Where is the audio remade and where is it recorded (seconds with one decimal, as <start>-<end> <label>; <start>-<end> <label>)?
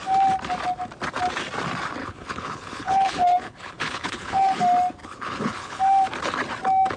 0.0-2.0 recorded; 2.0-4.6 remade; 4.6-5.0 recorded; 5.0-5.8 remade; 5.8-7.0 recorded